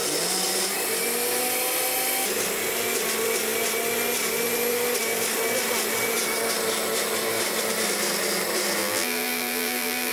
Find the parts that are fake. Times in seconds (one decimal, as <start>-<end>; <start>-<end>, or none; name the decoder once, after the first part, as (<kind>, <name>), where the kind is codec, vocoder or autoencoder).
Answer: 8.8-10.1 (vocoder, BigVGAN v2)